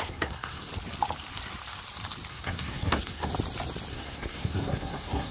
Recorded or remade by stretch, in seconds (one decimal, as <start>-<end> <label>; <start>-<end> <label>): 0.0-0.7 remade; 0.7-2.3 recorded; 2.3-3.3 remade; 3.3-3.9 recorded; 3.9-5.3 remade